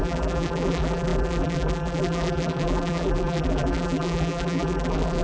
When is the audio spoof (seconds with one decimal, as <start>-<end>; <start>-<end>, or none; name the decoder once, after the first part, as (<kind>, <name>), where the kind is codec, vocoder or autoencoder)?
0.0-5.2 (vocoder, BigVGAN v2)